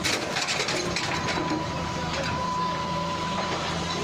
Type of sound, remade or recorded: remade